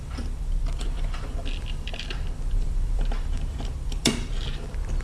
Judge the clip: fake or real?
fake